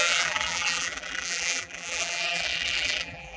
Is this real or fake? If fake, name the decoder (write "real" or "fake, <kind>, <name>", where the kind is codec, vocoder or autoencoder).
fake, vocoder, BigVGAN v2